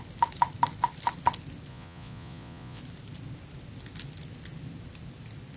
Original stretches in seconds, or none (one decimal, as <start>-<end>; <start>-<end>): 0.0-1.7; 2.8-5.6